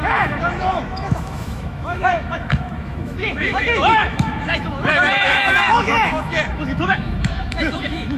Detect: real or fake fake